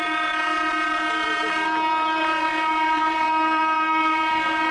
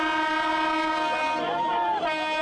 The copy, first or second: first